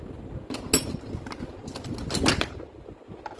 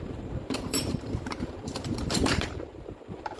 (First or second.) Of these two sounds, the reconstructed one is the second